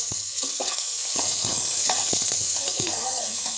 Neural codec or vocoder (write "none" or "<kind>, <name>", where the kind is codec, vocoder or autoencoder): codec, SNAC